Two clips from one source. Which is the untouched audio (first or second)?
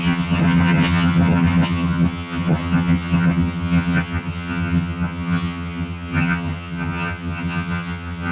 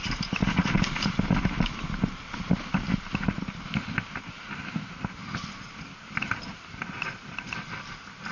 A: second